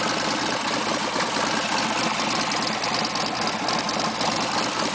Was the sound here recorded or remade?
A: recorded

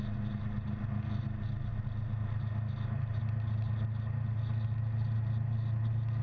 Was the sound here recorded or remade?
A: recorded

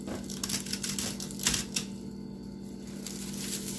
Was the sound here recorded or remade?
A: recorded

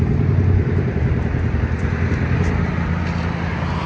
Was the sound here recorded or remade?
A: recorded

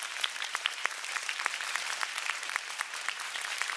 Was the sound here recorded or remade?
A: remade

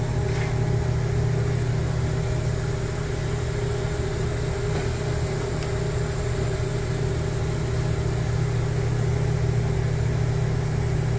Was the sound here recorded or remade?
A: recorded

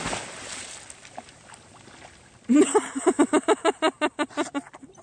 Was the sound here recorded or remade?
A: recorded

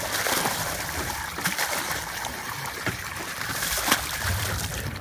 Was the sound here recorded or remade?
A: remade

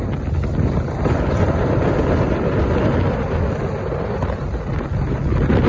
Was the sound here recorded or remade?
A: recorded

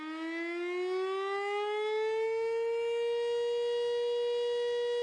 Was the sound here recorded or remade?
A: recorded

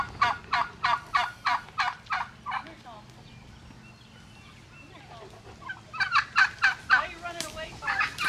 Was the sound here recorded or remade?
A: recorded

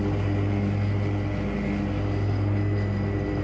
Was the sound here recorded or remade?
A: recorded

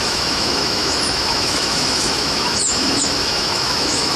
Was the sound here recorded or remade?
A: remade